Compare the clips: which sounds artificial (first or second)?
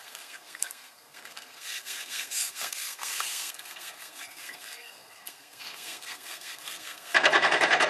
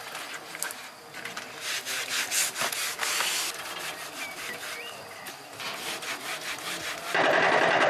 first